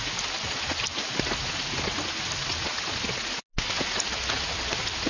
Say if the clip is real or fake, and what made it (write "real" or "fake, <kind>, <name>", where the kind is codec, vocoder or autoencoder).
real